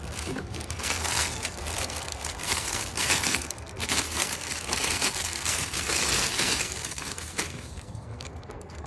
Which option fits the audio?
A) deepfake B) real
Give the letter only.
A